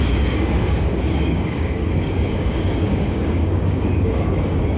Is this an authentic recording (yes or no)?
no